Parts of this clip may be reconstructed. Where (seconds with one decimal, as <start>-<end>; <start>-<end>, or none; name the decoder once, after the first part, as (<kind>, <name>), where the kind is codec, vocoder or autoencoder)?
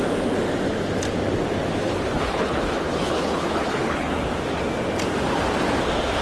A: 1.8-4.2 (codec, HILCodec)